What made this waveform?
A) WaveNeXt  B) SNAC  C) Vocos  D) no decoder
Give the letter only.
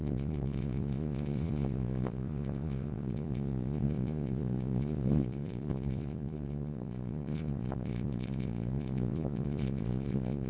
C